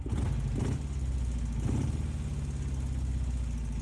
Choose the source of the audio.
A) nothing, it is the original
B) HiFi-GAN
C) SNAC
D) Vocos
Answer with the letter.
A